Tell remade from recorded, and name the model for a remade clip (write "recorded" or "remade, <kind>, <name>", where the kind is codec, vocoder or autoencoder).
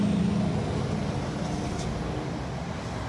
recorded